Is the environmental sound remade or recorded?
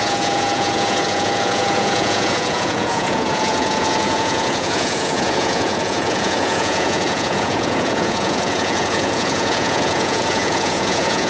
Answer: remade